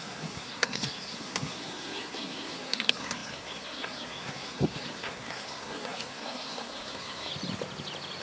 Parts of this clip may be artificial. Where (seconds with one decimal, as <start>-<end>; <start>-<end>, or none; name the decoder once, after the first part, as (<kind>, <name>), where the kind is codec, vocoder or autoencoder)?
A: 0.0-7.3 (codec, SNAC)